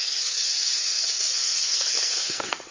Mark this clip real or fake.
fake